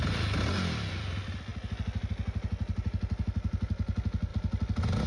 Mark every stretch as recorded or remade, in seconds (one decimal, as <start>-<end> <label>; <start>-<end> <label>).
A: 0.0-5.1 recorded